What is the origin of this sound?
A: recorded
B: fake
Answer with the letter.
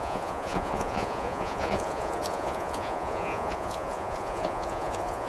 B